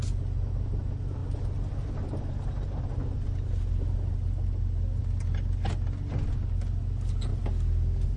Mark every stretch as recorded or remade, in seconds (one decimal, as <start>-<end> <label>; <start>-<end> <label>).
0.0-8.2 recorded